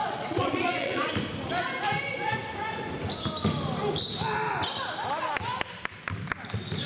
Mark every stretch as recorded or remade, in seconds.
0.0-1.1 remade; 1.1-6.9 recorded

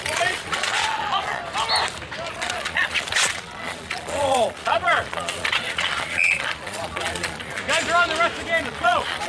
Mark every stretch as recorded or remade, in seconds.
0.0-1.4 remade; 1.4-2.3 recorded; 2.3-7.6 remade; 7.6-8.6 recorded; 8.6-9.3 remade

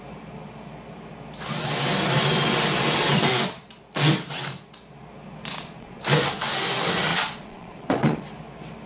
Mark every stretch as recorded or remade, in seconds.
0.0-5.5 recorded; 5.5-6.0 remade; 6.0-7.1 recorded; 7.1-8.2 remade; 8.2-8.9 recorded

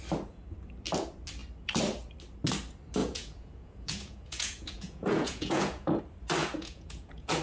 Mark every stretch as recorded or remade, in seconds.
0.0-3.0 recorded; 3.0-6.0 remade; 6.0-6.4 recorded; 6.4-7.4 remade

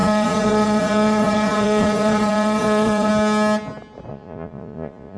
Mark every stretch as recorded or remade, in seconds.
0.0-3.1 remade; 3.1-4.1 recorded; 4.1-5.2 remade